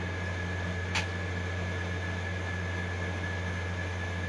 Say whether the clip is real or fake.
real